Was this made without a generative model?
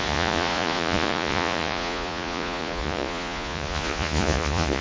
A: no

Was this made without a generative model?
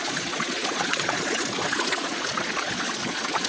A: no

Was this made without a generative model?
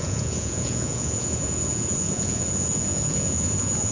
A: no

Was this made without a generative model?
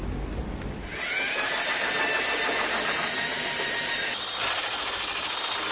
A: yes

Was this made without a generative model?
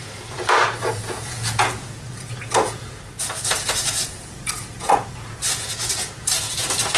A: no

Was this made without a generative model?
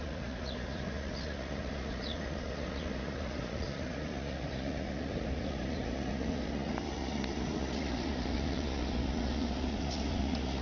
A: no